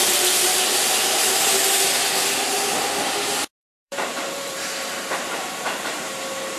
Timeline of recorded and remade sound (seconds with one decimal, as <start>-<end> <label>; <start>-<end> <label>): 0.0-3.6 recorded; 3.6-6.1 remade; 6.1-6.6 recorded